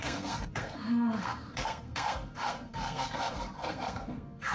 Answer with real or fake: fake